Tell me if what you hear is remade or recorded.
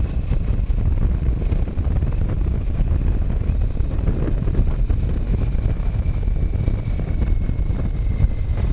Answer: remade